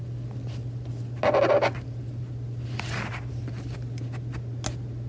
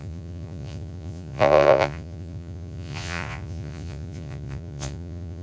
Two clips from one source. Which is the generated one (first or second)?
second